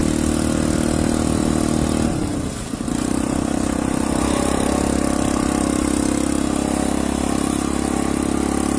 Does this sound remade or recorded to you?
recorded